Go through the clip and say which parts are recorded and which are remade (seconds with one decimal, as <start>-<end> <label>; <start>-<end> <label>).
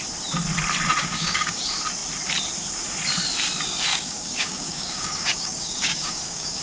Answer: 0.0-1.0 recorded; 1.0-1.6 remade; 1.6-3.9 recorded; 3.9-6.6 remade